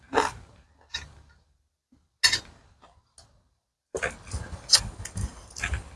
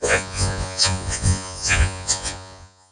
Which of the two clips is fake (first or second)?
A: second